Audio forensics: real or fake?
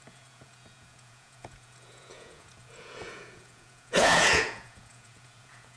fake